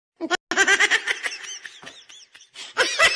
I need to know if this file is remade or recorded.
recorded